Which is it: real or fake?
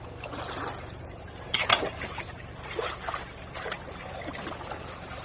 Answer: fake